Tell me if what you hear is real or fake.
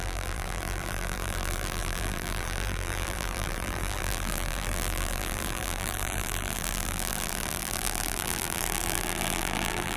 fake